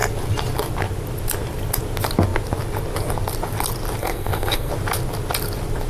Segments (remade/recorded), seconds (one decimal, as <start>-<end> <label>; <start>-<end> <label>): 0.0-4.0 recorded; 4.0-4.7 remade; 4.7-5.9 recorded